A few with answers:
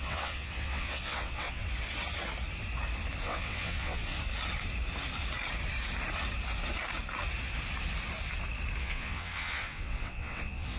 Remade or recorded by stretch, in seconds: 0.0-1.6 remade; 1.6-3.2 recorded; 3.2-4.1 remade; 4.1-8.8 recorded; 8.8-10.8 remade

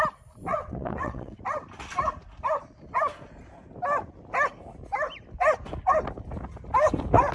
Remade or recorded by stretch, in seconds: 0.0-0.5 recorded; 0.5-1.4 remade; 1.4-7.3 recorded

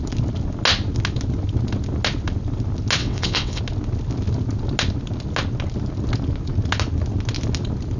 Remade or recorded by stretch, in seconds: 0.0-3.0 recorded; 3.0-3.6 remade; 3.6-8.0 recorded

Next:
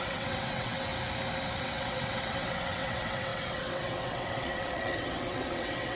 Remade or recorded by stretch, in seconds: 0.0-0.9 remade; 0.9-1.6 recorded; 1.6-6.0 remade

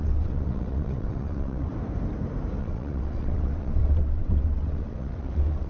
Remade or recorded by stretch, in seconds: 0.0-1.7 remade; 1.7-2.6 recorded; 2.6-5.7 remade

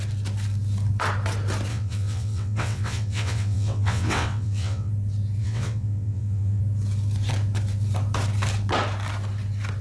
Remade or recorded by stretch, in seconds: 0.0-1.7 recorded; 1.7-4.9 remade; 4.9-5.4 recorded; 5.4-6.6 remade; 6.6-9.8 recorded

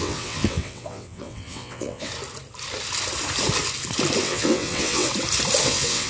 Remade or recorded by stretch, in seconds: 0.0-2.1 remade; 2.1-4.2 recorded; 4.2-5.1 remade; 5.1-5.6 recorded; 5.6-6.1 remade

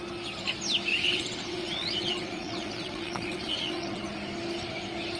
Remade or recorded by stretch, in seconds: 0.0-0.9 recorded; 0.9-4.0 remade; 4.0-5.2 recorded